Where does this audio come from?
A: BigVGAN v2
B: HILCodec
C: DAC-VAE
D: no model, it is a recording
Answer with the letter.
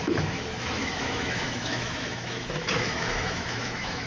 C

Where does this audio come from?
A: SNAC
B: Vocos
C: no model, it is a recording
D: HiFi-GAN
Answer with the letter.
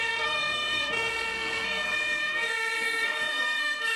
A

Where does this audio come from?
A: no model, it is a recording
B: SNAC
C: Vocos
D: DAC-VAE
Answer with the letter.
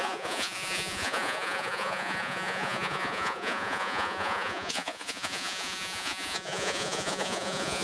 C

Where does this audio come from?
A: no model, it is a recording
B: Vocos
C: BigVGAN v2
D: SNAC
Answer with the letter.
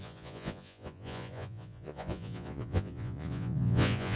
B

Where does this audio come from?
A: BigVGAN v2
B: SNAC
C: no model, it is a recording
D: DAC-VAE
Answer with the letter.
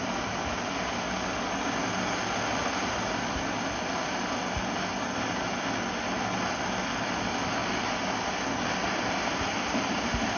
C